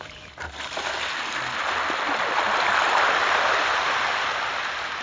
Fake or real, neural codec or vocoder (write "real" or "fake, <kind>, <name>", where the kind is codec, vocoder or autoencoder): real